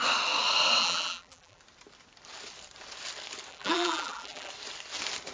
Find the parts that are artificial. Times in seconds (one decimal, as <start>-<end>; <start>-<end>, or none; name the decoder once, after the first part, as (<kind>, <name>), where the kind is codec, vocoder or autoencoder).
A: 0.8-1.6 (vocoder, BigVGAN v2); 3.5-4.5

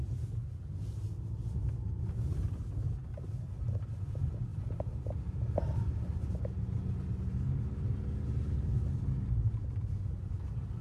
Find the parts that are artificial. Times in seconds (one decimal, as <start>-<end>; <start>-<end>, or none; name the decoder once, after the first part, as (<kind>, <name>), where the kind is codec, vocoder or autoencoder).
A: none

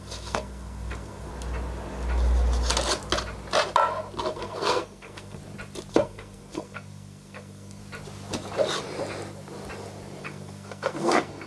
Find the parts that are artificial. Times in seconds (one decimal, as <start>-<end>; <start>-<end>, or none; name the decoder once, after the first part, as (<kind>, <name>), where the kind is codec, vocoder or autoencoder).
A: 0.0-1.3 (codec, SNAC); 4.2-5.4; 5.9-7.8; 10.2-11.5

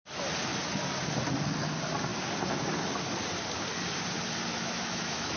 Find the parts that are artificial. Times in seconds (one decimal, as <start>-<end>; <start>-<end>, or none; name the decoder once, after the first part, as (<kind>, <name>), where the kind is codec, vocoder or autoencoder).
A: 4.5-5.4 (autoencoder, DAC-VAE)

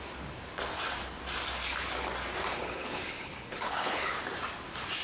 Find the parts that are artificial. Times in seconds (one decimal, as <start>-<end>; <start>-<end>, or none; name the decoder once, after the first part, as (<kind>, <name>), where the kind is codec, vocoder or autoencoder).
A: 2.5-4.2 (codec, HILCodec)

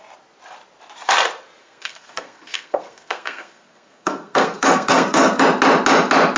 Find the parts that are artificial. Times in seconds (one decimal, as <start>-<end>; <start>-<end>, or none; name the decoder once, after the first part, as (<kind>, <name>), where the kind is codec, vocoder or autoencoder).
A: 1.6-5.4 (codec, SNAC)